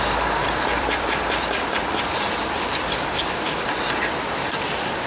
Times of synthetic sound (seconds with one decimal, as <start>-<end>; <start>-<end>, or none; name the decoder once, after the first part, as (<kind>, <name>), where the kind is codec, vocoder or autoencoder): 0.4-3.5 (vocoder, BigVGAN v2)